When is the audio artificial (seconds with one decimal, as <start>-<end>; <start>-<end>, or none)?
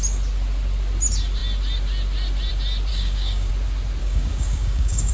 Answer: 2.9-3.5; 4.0-5.1